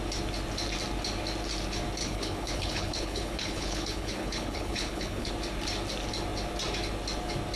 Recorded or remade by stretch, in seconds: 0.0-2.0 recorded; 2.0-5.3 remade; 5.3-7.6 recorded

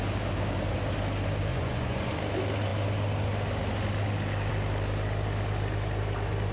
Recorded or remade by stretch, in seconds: 0.0-1.5 recorded; 1.5-2.1 remade; 2.1-6.5 recorded